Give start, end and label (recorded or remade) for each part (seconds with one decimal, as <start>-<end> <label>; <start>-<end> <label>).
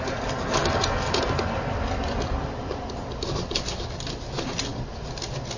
0.0-5.6 recorded